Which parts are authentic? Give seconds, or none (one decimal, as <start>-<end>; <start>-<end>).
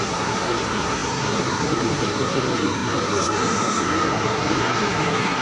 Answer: none